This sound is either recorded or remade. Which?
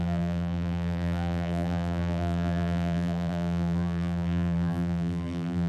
remade